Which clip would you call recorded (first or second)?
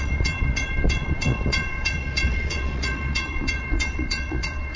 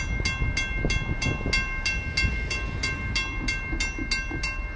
second